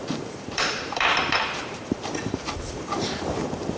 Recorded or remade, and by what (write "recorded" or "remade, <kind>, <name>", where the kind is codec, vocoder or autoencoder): remade, vocoder, BigVGAN v2